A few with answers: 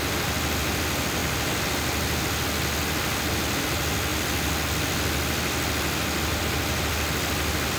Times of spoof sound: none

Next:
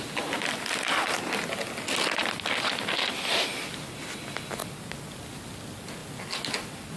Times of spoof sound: 4.6-5.4 (vocoder, BigVGAN v2)

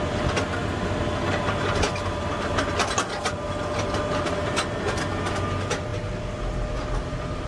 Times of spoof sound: none

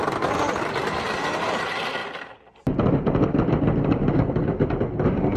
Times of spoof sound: 2.0-4.7 (vocoder, BigVGAN v2)

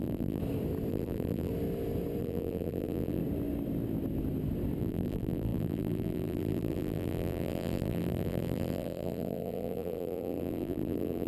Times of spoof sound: 0.0-0.4 (vocoder, BigVGAN v2); 0.9-1.5; 2.2-3.2; 4.8-11.3

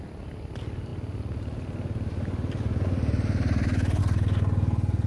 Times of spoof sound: none

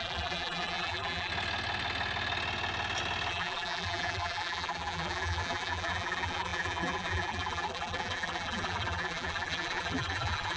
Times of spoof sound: 0.0-1.3 (vocoder, BigVGAN v2); 3.3-10.6

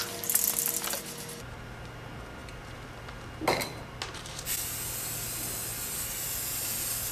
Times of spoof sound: none